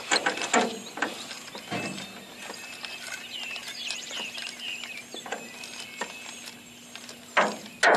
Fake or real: real